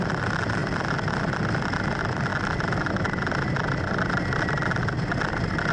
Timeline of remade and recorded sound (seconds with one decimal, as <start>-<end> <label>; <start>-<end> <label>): 0.0-5.7 recorded